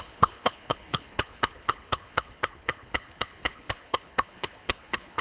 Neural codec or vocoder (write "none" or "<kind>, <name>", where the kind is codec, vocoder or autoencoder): codec, HILCodec